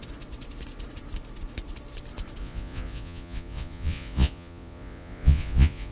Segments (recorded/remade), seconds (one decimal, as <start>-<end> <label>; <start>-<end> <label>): 0.0-2.4 recorded; 2.4-5.9 remade

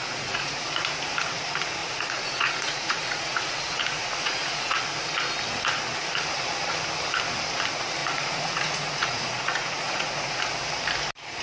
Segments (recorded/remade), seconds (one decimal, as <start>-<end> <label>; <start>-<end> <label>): 0.0-0.5 remade; 0.5-1.8 recorded; 1.8-4.8 remade; 4.8-8.0 recorded; 8.0-10.4 remade; 10.4-11.4 recorded

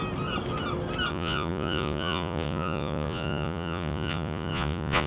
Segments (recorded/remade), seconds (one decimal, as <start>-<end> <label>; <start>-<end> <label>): 0.0-1.1 recorded; 1.1-5.1 remade

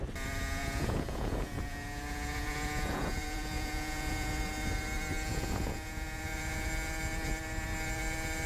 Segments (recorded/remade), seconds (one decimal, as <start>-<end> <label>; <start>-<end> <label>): 0.0-0.6 recorded; 0.6-4.3 remade; 4.3-5.3 recorded; 5.3-6.7 remade; 6.7-8.5 recorded

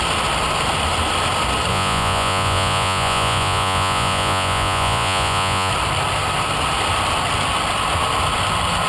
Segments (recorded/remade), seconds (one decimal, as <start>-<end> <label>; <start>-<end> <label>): 0.0-1.7 recorded; 1.7-5.7 remade; 5.7-8.9 recorded

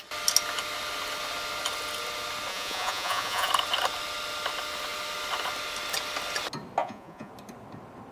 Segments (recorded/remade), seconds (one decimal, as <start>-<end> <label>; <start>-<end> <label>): 0.0-2.5 recorded; 2.5-3.5 remade; 3.5-6.8 recorded; 6.8-7.3 remade; 7.3-8.1 recorded

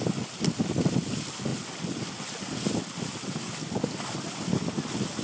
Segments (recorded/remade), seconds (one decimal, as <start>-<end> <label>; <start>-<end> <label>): 0.0-5.2 recorded

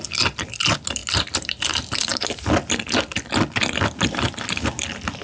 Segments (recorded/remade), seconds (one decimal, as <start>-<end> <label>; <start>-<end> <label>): 0.0-5.2 recorded